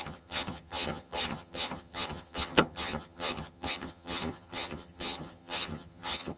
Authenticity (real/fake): fake